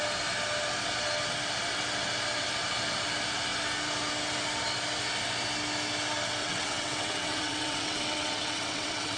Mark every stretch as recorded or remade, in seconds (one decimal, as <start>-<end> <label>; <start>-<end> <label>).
0.0-6.4 recorded; 6.4-9.2 remade